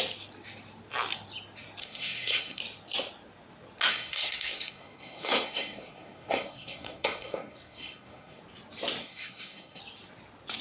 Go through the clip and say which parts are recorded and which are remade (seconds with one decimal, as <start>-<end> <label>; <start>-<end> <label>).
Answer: 0.0-1.8 recorded; 1.8-2.6 remade; 2.6-3.9 recorded; 3.9-8.4 remade; 8.4-9.0 recorded; 9.0-9.8 remade; 9.8-10.6 recorded